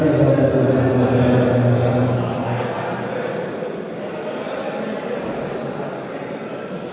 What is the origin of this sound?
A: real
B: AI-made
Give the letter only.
A